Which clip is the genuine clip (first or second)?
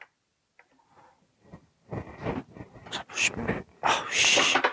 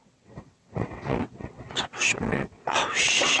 first